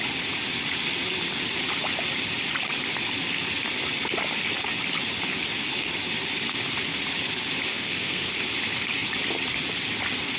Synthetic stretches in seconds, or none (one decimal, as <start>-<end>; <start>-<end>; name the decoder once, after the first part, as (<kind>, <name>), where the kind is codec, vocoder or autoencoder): 7.7-8.3 (codec, SNAC)